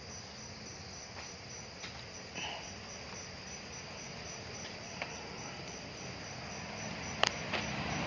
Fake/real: real